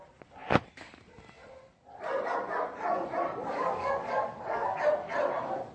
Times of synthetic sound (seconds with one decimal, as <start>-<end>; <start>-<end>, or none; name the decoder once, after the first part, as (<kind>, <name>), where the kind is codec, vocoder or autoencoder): 3.5-4.8 (codec, DAC)